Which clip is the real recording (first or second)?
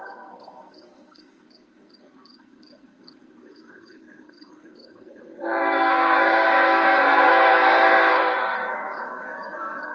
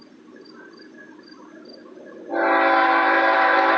second